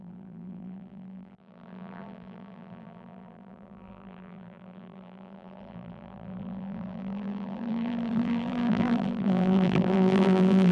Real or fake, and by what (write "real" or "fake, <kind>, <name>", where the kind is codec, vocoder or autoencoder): fake, vocoder, BigVGAN v2